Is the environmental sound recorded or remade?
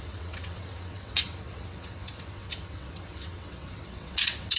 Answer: remade